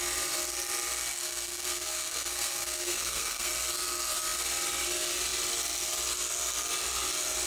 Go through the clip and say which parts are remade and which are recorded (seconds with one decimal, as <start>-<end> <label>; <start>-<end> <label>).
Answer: 0.0-1.1 recorded; 1.1-3.5 remade; 3.5-7.5 recorded